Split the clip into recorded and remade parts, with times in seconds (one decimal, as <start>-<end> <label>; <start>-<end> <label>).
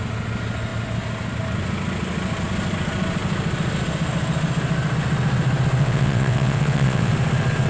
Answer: 0.0-5.8 recorded; 5.8-7.1 remade; 7.1-7.7 recorded